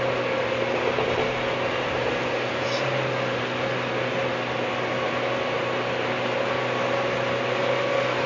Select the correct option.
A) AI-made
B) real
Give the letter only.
B